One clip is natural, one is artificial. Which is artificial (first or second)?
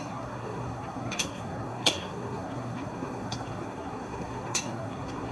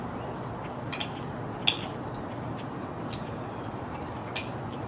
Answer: first